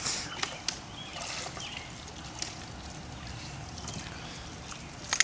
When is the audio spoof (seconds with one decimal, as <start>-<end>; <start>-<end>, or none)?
none